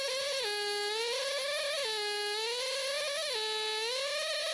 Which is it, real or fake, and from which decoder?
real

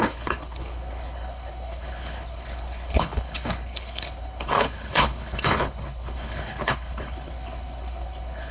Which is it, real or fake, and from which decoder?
fake, codec, HILCodec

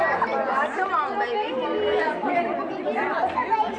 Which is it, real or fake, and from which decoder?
real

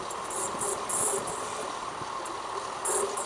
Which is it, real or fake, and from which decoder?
real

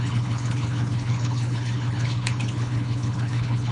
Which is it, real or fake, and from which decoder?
fake, codec, HILCodec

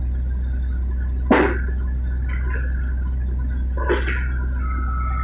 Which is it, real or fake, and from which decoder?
real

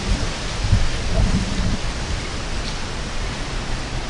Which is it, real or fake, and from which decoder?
real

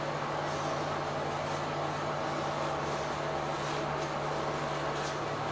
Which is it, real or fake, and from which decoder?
real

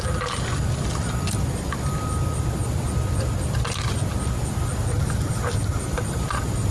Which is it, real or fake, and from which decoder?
real